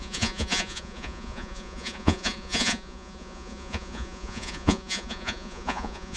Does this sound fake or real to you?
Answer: fake